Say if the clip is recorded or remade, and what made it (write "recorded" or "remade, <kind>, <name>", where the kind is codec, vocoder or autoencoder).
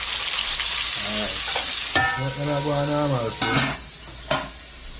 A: recorded